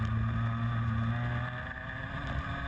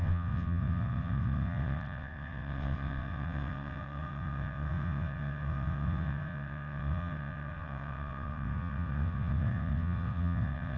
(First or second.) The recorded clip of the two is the first